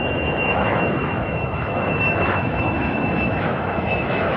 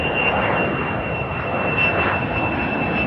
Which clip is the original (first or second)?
second